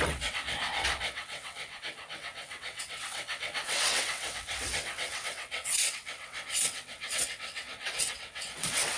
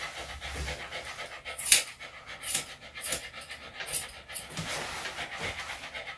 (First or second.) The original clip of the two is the second